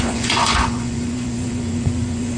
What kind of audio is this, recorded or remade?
remade